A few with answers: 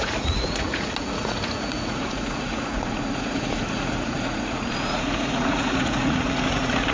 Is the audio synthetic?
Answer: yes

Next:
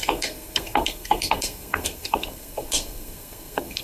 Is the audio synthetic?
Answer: yes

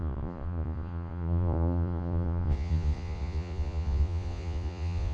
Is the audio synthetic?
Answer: yes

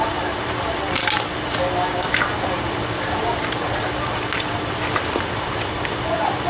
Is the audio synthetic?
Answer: no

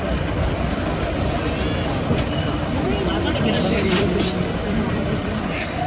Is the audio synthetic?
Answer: yes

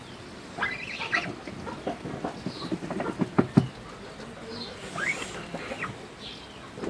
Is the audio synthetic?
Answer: no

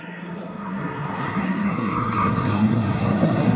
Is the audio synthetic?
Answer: yes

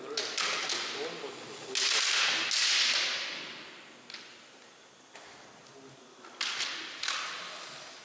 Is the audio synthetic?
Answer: no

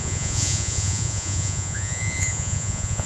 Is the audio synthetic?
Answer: yes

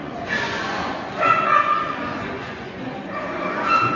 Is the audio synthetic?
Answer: yes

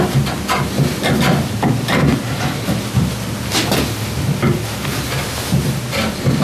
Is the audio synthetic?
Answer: no